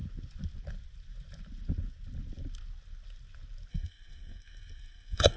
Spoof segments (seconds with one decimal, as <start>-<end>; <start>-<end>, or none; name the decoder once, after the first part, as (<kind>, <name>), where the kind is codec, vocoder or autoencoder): 3.7-5.4 (codec, SNAC)